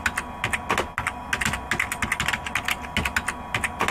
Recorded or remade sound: recorded